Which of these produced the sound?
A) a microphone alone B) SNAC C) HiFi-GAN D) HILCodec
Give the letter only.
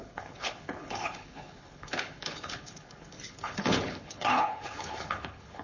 D